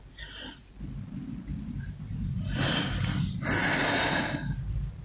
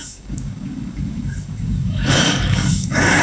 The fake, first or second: second